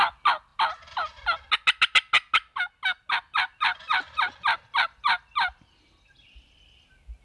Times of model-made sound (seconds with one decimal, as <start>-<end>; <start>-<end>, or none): none